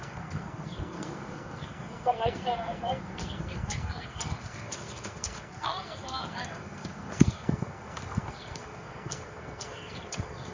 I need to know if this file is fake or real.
fake